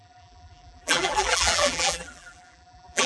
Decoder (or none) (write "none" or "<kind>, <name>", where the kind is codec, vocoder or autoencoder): vocoder, BigVGAN v2